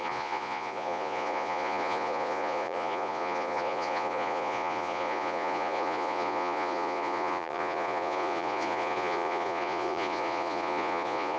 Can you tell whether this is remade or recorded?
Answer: remade